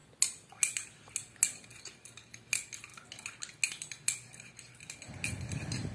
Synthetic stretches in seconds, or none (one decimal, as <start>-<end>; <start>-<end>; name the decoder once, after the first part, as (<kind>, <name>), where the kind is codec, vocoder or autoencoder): none

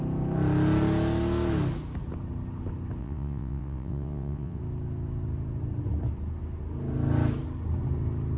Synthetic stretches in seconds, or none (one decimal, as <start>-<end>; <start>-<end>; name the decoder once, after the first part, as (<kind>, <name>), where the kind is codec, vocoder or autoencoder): 3.0-4.6 (vocoder, WaveNeXt)

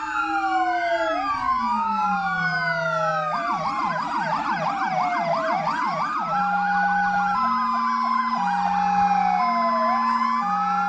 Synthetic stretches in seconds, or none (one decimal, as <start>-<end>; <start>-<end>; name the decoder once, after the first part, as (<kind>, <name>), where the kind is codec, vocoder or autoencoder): none

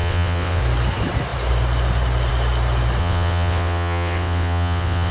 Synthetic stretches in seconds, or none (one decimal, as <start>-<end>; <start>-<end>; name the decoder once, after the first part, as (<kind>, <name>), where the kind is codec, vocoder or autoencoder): 0.0-0.6 (vocoder, WaveNeXt); 3.0-5.1